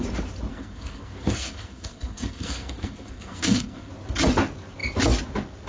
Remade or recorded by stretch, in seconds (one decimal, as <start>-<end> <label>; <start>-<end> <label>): 0.0-0.5 recorded; 0.5-3.9 remade; 3.9-5.7 recorded